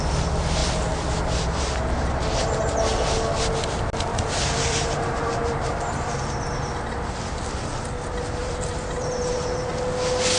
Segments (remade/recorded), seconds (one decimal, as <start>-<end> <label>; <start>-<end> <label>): 0.0-4.1 recorded; 4.1-6.0 remade; 6.0-8.4 recorded; 8.4-9.7 remade; 9.7-10.4 recorded